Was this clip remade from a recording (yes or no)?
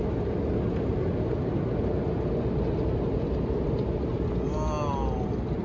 no